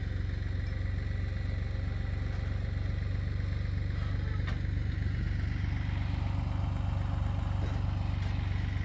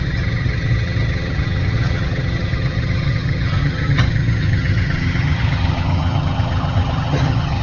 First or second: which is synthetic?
second